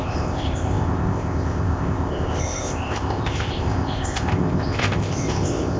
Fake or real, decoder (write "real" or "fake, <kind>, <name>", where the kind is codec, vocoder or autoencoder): fake, codec, ZipCodec